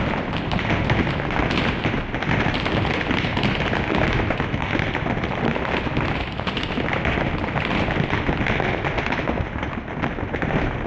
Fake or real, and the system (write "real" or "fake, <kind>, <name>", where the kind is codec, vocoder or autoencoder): real